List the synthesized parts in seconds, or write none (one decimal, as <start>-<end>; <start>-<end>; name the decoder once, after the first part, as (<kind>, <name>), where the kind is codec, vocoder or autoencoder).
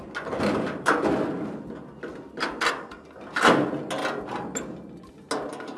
none